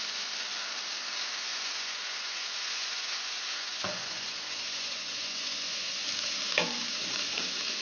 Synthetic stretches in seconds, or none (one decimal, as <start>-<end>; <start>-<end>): 1.5-6.0